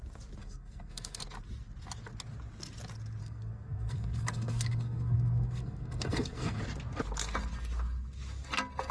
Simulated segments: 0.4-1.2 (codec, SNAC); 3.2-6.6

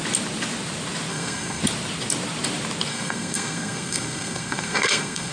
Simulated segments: 1.1-1.6 (codec, SNAC); 2.9-5.3

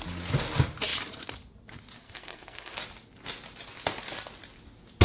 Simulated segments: 2.0-2.8 (codec, SNAC)

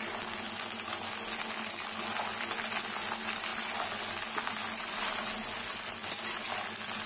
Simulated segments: none

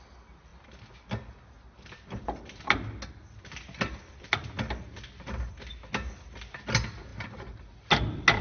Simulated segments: none

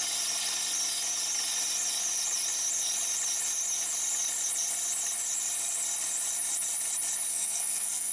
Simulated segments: 7.3-8.1 (codec, SNAC)